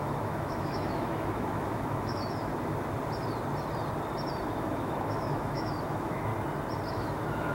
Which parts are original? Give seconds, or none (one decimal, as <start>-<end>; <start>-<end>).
2.5-4.5; 6.3-6.9